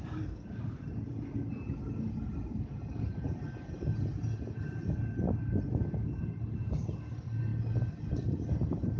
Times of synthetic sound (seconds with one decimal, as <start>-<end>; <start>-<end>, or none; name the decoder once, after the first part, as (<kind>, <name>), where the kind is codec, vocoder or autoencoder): none